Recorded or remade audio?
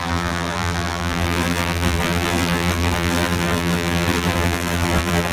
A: remade